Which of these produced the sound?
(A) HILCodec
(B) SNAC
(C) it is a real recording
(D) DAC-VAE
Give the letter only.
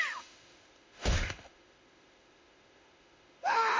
D